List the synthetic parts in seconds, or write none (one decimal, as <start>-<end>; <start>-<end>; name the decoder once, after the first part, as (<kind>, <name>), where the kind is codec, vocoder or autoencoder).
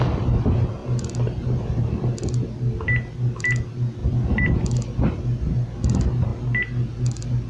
0.8-1.9 (vocoder, BigVGAN v2)